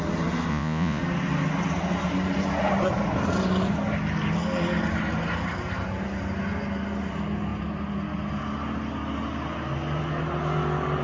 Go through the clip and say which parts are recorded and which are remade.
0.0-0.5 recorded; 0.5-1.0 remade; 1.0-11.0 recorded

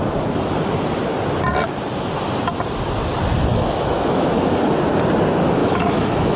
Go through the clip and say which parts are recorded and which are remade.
0.0-3.5 recorded; 3.5-4.3 remade; 4.3-5.6 recorded; 5.6-6.4 remade

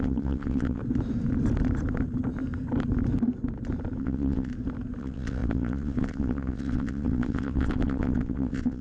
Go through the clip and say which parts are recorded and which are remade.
0.0-0.8 remade; 0.8-4.0 recorded; 4.0-4.5 remade; 4.5-5.0 recorded; 5.0-8.8 remade